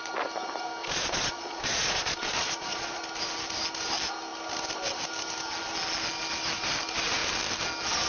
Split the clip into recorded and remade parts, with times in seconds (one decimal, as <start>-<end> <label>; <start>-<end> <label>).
0.0-0.8 recorded; 0.8-3.0 remade; 3.0-8.1 recorded